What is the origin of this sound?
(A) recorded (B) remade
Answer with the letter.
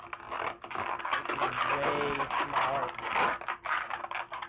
A